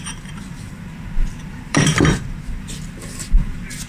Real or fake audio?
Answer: fake